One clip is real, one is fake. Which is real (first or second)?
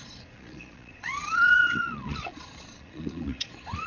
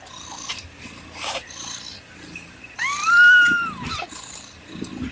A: second